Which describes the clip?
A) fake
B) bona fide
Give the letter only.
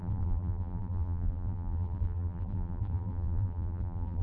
A